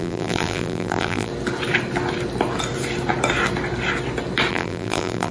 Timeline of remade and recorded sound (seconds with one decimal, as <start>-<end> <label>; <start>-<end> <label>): 0.0-1.3 remade; 1.3-4.5 recorded; 4.5-5.3 remade